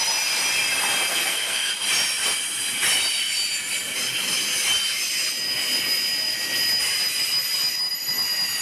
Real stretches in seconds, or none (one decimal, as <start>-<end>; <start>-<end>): 0.0-1.1; 1.7-8.6